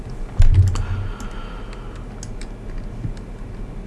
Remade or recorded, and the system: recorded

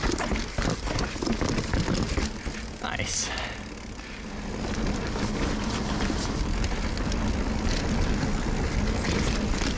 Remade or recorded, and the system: recorded